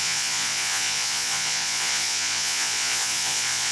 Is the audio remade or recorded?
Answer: remade